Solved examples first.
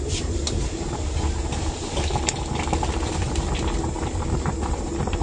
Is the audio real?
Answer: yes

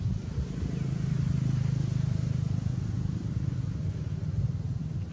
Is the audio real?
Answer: yes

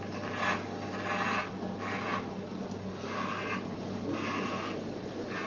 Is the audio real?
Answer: yes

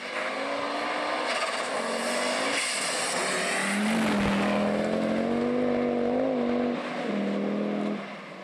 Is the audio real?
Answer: yes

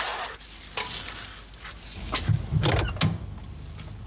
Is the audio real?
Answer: yes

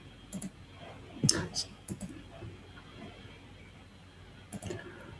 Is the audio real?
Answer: yes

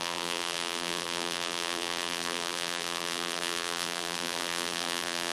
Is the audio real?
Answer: no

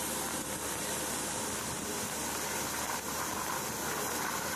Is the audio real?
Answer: yes